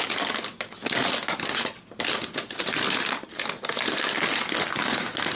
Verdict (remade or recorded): recorded